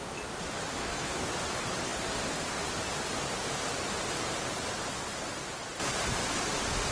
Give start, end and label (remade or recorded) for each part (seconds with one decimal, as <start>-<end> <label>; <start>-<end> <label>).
0.0-0.8 recorded; 0.8-1.3 remade; 1.3-6.9 recorded